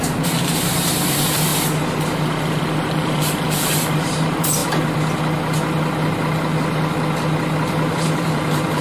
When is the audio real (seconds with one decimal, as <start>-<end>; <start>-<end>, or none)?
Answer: 1.5-2.6; 4.6-7.9